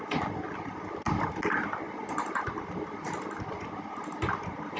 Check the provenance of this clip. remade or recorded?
recorded